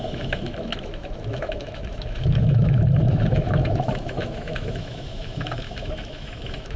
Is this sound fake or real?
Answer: fake